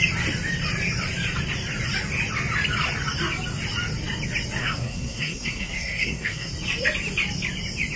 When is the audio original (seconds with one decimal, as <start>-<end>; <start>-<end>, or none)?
0.0-4.6; 6.5-8.0